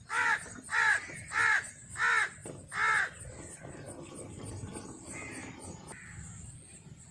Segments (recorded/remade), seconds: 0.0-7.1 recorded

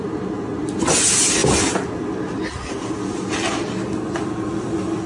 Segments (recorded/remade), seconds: 0.0-5.1 recorded